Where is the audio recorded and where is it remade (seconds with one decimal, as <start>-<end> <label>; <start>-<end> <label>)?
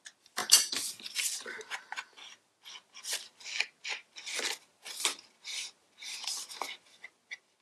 0.0-0.4 recorded; 0.4-1.4 remade; 1.4-7.6 recorded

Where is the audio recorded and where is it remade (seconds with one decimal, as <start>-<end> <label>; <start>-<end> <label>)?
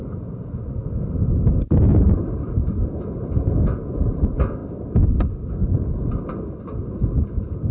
0.0-1.9 recorded; 1.9-3.0 remade; 3.0-7.7 recorded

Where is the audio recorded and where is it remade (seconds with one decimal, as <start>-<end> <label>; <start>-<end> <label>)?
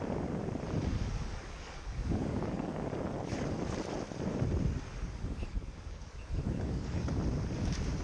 0.0-0.9 recorded; 0.9-2.9 remade; 2.9-4.9 recorded; 4.9-7.0 remade; 7.0-8.0 recorded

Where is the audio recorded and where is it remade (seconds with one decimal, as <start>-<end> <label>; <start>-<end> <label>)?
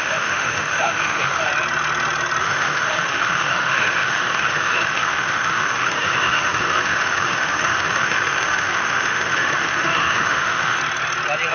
0.0-1.5 remade; 1.5-2.4 recorded; 2.4-10.8 remade; 10.8-11.5 recorded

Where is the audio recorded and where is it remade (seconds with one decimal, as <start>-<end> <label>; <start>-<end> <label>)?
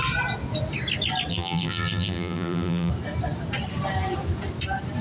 0.0-1.3 recorded; 1.3-2.9 remade; 2.9-5.0 recorded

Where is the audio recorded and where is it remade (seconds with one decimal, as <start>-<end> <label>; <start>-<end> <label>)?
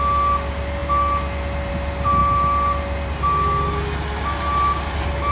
0.0-5.3 recorded